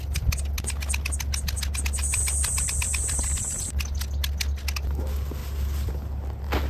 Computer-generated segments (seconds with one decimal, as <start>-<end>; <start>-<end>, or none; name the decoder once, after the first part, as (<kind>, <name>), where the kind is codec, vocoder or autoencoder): 2.0-3.2 (vocoder, BigVGAN v2); 5.4-5.9